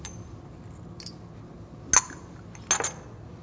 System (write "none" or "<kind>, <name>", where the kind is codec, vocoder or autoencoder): none